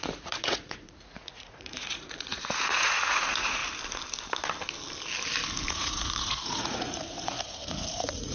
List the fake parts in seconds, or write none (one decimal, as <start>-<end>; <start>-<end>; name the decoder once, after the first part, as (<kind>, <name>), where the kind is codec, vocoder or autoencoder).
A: 0.0-3.6 (vocoder, Vocos); 5.7-8.3